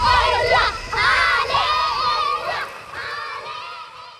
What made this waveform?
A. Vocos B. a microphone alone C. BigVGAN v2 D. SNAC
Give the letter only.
C